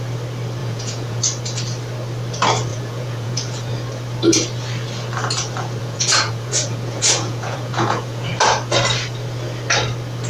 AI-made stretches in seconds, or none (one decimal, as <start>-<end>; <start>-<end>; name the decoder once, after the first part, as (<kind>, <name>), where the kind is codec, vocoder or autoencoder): 0.6-1.2 (vocoder, Vocos); 2.7-3.7; 5.8-8.3

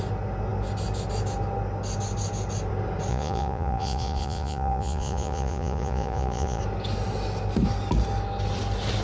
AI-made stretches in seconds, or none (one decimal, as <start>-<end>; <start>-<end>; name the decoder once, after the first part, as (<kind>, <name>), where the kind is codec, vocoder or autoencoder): 3.1-6.6 (vocoder, Vocos)

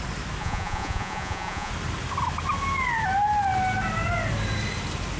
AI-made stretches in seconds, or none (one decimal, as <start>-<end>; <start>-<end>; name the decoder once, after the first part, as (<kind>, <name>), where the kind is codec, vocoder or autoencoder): 0.4-1.7 (vocoder, Vocos)

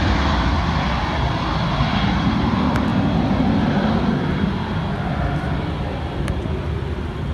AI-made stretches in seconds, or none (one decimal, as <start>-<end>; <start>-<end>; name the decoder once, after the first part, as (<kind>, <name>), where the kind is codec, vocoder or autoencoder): none

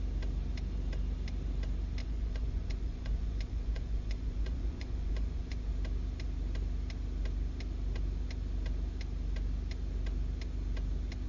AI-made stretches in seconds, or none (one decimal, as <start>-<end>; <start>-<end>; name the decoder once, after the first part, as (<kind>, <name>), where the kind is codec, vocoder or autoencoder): 2.0-5.7 (vocoder, Vocos)

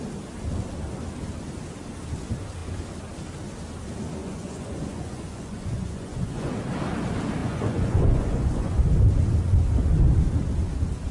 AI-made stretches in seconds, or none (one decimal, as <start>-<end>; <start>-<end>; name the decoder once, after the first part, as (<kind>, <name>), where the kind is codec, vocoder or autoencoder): 4.2-6.5 (vocoder, Vocos); 7.4-8.8

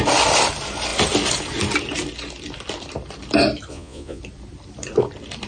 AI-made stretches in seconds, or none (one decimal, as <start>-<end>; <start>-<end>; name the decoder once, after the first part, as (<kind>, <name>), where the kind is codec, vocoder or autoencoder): 3.7-4.2 (vocoder, Vocos)

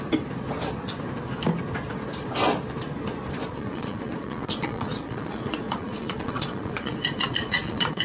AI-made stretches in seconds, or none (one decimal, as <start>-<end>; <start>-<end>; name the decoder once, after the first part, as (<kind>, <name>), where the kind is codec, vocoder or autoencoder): 3.4-8.0 (vocoder, Vocos)